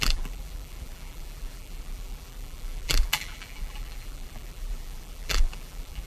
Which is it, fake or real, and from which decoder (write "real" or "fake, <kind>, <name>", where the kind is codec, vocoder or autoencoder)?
fake, vocoder, BigVGAN v2